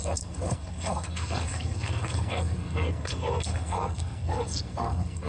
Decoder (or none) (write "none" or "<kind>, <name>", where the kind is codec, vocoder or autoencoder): codec, SNAC